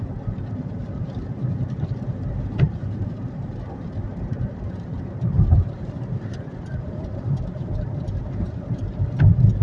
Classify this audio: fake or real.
fake